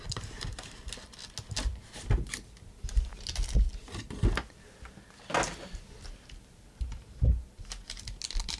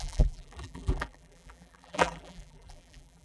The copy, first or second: second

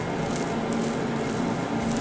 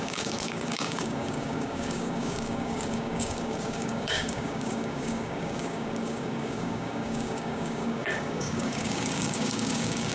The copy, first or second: second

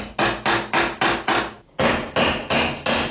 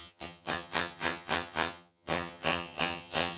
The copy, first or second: second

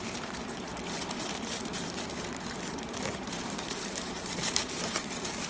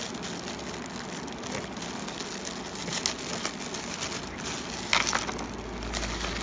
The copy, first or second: first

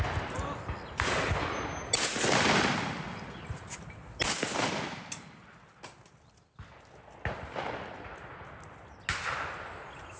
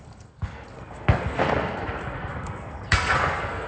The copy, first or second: second